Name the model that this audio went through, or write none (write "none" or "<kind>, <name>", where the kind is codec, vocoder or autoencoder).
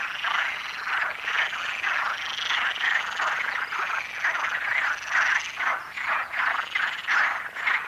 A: none